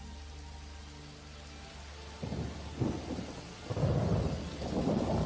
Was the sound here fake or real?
real